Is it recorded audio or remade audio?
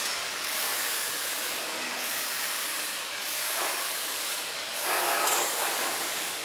remade